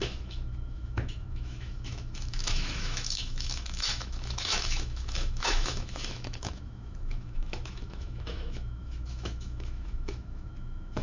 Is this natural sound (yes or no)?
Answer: no